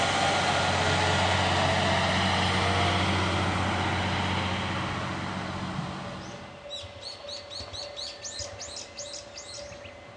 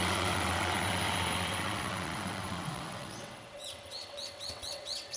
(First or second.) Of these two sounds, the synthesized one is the second